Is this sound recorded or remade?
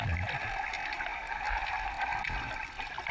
recorded